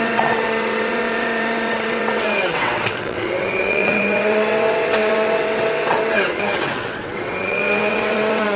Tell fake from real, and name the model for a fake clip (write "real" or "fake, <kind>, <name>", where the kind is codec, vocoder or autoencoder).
fake, vocoder, WaveNeXt